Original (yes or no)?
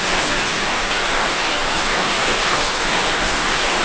no